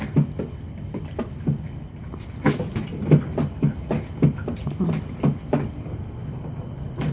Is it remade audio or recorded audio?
recorded